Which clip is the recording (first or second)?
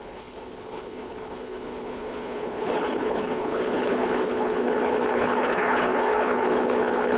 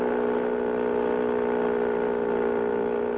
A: second